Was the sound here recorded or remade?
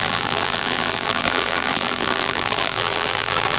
remade